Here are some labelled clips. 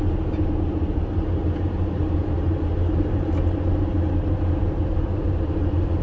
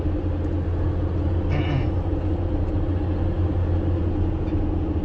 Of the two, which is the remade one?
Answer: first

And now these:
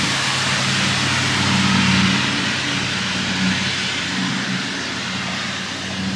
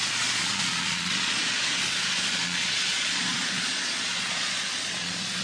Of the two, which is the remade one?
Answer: second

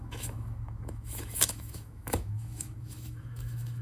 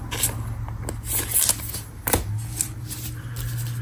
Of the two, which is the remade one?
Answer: first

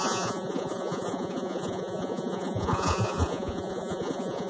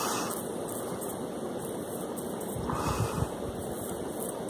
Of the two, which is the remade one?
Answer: first